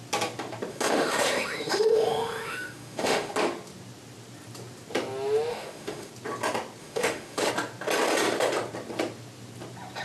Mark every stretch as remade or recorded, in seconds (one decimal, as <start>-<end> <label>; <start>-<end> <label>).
0.0-0.7 recorded; 0.7-3.3 remade; 3.3-5.5 recorded; 5.5-6.1 remade; 6.1-6.8 recorded; 6.8-7.5 remade; 7.5-10.0 recorded